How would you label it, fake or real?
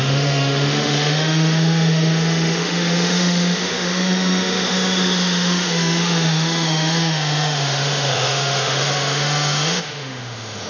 fake